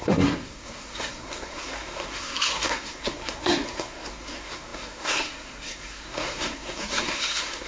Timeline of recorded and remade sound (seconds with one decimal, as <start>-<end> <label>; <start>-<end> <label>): 0.0-7.7 remade